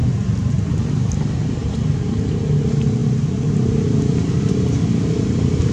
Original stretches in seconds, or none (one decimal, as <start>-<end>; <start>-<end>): 0.9-3.0; 4.5-5.7